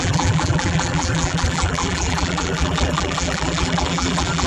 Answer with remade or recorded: remade